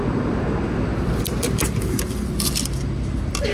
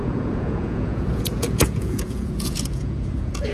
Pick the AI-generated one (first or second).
second